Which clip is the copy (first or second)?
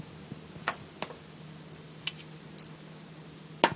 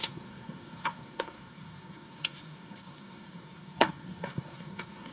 second